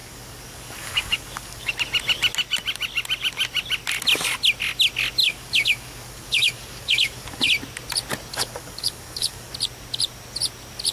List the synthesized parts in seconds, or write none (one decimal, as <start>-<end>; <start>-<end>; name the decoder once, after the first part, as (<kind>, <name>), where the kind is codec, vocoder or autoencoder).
0.0-1.7 (codec, DAC); 5.2-7.5; 8.3-9.5